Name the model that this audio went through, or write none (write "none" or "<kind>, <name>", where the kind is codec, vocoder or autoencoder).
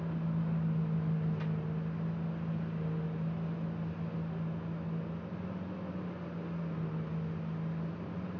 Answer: none